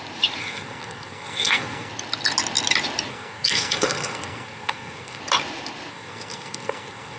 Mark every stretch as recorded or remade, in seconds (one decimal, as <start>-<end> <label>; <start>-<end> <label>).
0.0-0.4 recorded; 0.4-1.9 remade; 1.9-3.1 recorded; 3.1-5.2 remade; 5.2-5.9 recorded; 5.9-7.2 remade